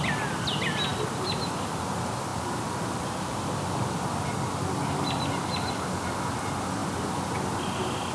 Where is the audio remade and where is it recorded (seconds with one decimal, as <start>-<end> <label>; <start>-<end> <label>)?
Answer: 0.0-0.9 recorded; 0.9-1.8 remade; 1.8-2.3 recorded; 2.3-5.7 remade; 5.7-8.1 recorded